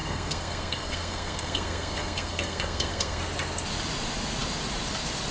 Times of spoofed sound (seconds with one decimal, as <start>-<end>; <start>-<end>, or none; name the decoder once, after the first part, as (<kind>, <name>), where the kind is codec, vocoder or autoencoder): 0.0-3.2 (codec, SNAC)